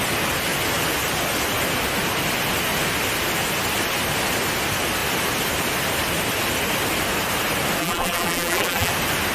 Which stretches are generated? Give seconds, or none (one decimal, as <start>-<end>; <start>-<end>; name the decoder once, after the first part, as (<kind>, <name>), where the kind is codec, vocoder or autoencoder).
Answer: 7.8-8.9 (vocoder, BigVGAN v2)